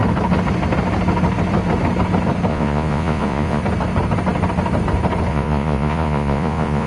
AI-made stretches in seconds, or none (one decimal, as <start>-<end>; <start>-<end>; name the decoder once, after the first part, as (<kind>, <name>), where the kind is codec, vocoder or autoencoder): 2.5-3.6 (vocoder, Vocos); 5.3-6.9